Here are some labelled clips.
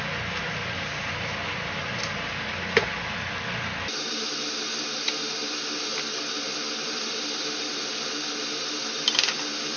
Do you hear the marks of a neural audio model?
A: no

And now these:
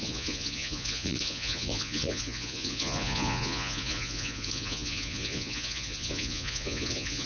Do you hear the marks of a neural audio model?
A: yes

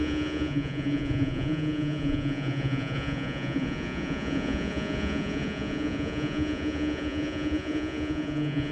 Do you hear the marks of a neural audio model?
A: yes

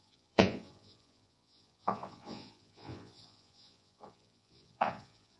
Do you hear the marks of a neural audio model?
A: yes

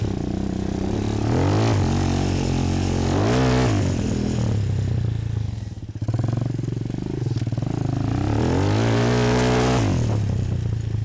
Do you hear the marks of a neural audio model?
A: no